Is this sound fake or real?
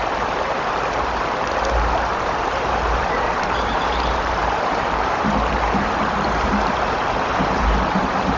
fake